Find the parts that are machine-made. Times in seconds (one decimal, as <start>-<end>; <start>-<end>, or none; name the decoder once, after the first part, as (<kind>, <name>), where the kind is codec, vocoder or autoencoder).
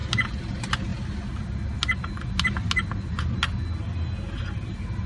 none